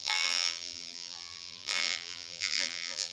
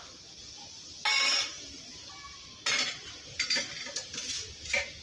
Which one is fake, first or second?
first